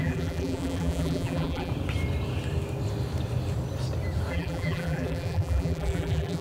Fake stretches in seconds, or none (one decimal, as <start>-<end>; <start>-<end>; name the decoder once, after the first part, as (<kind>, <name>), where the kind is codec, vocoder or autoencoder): 0.0-1.7 (vocoder, BigVGAN v2); 4.3-6.4